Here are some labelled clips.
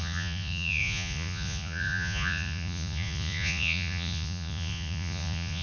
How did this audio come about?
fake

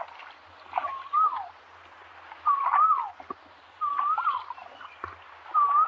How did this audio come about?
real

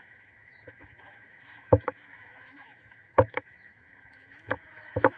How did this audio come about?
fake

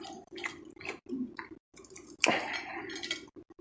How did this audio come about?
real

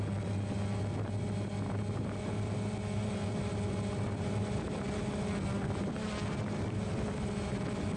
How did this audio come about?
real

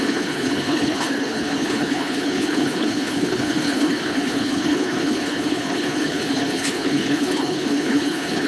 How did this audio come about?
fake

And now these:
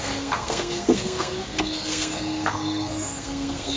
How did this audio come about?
fake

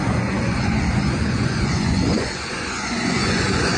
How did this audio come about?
fake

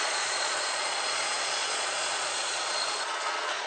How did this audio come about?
fake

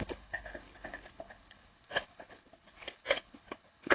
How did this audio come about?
fake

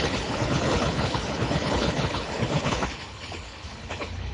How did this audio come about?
fake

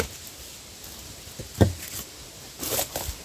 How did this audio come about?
real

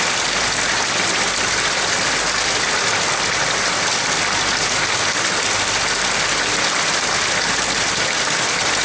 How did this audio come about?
real